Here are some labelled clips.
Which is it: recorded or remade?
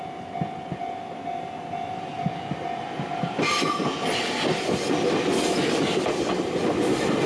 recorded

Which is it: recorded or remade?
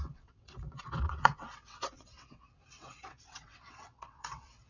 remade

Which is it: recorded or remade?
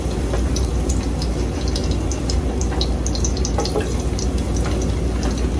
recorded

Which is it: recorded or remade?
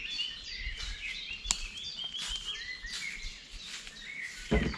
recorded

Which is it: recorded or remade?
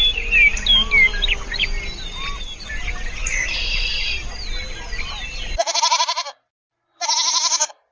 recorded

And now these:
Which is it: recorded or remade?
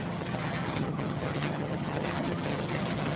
remade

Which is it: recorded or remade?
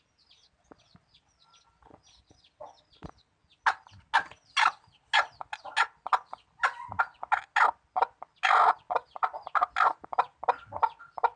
recorded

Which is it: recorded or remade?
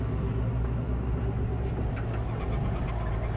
recorded